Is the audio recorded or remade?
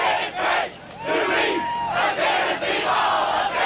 recorded